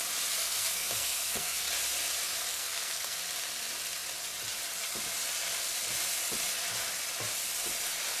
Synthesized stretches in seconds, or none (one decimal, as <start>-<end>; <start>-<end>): 0.4-1.7; 2.5-3.2